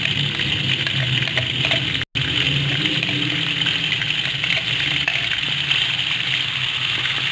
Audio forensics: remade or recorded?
recorded